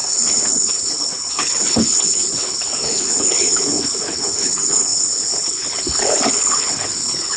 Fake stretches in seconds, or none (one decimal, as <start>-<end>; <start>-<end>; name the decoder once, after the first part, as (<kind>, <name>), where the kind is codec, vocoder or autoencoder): 0.0-7.4 (codec, HILCodec)